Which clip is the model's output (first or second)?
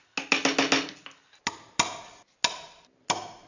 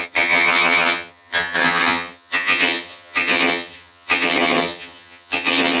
second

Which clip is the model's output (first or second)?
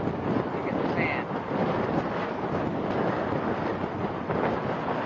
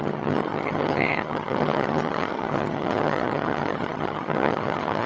second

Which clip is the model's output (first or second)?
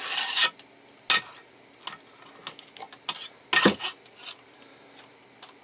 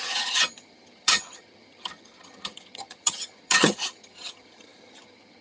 second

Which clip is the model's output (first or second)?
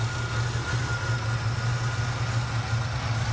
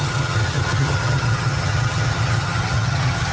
second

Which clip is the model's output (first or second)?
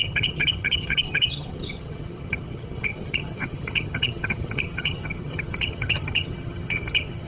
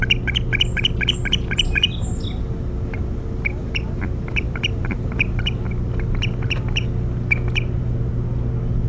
first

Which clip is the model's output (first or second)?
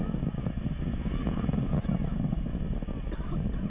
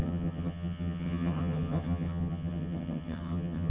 second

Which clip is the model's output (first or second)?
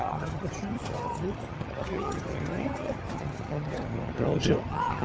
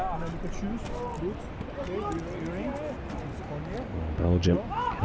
first